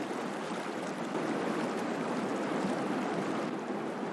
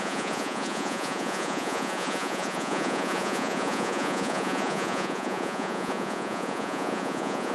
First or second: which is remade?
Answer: second